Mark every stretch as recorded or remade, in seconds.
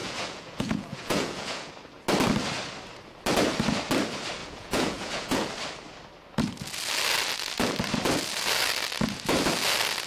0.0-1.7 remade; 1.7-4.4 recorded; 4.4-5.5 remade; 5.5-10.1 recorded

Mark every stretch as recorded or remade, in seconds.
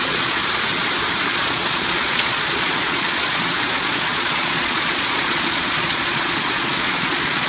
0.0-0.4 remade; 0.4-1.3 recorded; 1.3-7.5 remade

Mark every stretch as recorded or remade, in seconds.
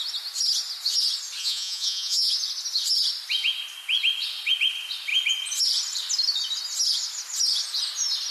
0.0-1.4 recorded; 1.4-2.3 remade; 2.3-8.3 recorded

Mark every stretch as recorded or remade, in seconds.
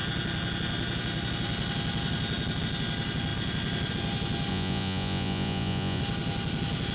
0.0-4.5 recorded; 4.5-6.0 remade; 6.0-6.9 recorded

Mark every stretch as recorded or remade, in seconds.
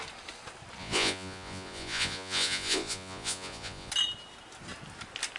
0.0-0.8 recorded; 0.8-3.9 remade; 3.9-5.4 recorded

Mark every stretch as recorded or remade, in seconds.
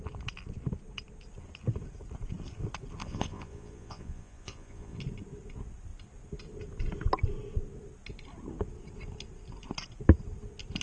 0.0-3.0 recorded; 3.0-5.0 remade; 5.0-10.8 recorded